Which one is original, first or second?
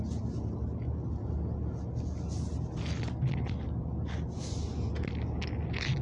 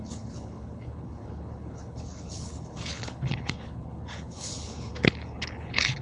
first